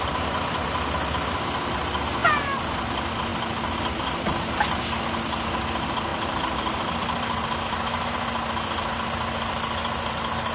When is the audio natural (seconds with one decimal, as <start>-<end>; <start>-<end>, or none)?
0.0-10.5